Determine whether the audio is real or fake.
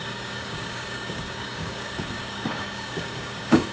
fake